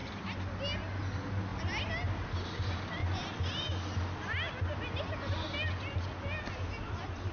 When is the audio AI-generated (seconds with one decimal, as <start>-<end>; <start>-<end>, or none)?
none